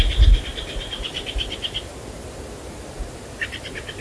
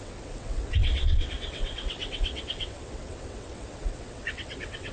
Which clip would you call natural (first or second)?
first